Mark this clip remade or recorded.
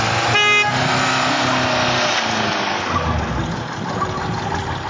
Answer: recorded